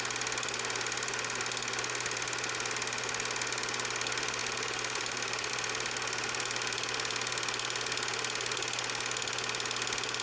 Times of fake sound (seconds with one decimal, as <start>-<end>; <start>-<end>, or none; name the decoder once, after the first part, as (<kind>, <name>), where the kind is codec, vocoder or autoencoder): 4.4-5.5 (vocoder, BigVGAN v2)